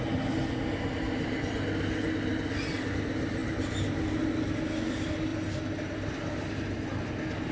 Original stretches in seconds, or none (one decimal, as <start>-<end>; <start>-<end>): 0.0-7.5